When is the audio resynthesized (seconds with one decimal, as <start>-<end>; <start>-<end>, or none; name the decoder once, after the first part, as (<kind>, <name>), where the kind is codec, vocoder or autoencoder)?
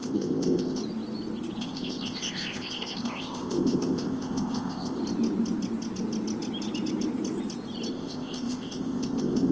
0.0-0.8 (codec, ZipCodec); 1.6-5.0; 7.9-9.5